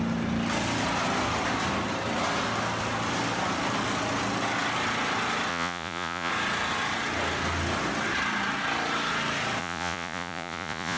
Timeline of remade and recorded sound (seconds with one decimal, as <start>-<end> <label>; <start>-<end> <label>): 0.0-5.5 recorded; 5.5-6.3 remade; 6.3-9.6 recorded; 9.6-11.0 remade